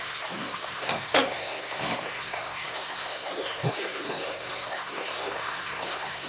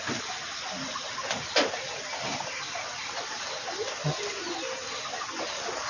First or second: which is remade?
first